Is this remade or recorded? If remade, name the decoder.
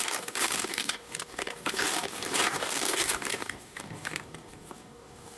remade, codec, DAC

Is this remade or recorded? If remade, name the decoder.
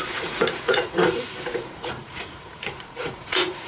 remade, vocoder, Vocos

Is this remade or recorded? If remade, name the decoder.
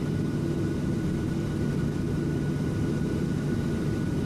recorded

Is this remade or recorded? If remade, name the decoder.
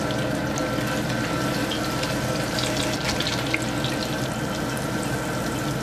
recorded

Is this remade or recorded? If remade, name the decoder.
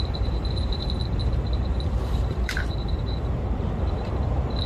remade, vocoder, BigVGAN v2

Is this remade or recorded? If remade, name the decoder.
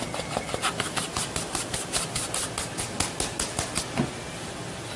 recorded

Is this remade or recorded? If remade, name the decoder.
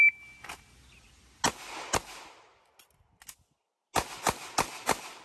recorded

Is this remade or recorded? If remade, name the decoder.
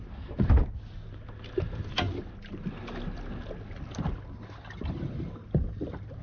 recorded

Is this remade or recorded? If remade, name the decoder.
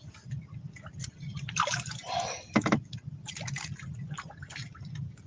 recorded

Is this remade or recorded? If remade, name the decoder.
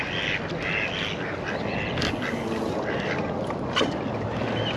recorded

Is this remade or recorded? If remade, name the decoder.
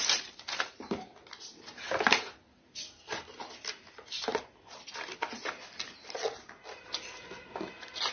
recorded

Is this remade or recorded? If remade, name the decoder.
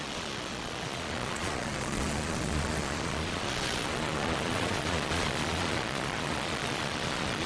remade, vocoder, Vocos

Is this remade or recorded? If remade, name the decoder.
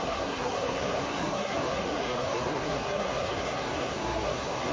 remade, codec, SNAC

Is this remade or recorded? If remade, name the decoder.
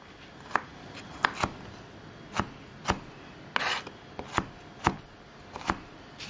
recorded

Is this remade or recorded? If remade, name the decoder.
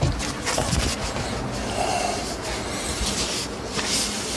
recorded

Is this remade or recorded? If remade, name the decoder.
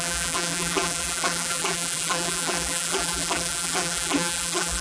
remade, vocoder, BigVGAN v2